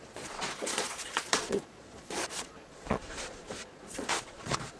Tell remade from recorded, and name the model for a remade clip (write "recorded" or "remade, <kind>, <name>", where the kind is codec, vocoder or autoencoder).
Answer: remade, vocoder, Vocos